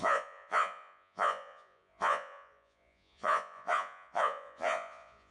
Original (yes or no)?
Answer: no